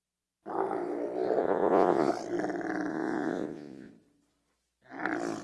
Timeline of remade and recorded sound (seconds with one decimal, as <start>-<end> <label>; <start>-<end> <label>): 0.0-1.4 recorded; 1.4-2.1 remade; 2.1-2.9 recorded; 2.9-3.9 remade; 3.9-5.4 recorded